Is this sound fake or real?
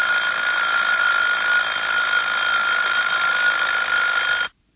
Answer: real